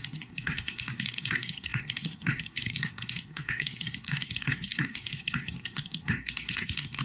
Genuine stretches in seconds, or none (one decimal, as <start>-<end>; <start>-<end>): none